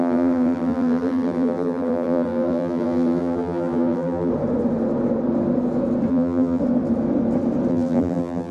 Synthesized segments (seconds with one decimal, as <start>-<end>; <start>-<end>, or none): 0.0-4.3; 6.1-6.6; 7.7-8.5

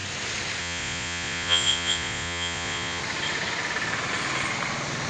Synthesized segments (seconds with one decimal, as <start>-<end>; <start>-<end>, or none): 0.6-3.0

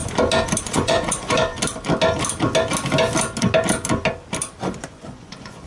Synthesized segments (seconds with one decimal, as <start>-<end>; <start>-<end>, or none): 0.6-1.5; 4.9-5.7

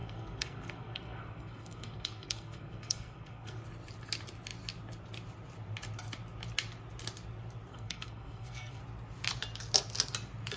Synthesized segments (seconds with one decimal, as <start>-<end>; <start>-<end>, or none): 0.0-3.6; 7.7-8.8

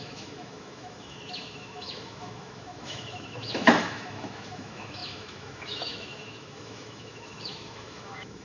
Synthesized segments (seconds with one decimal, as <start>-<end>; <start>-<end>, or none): 0.0-8.4

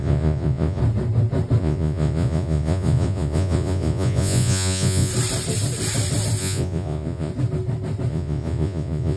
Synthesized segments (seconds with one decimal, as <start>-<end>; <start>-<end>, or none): 0.0-0.8; 1.6-5.1; 6.4-7.3; 8.1-9.2

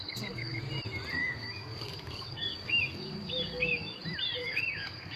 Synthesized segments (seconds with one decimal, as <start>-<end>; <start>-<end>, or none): 0.0-0.6; 1.2-4.0; 4.4-5.2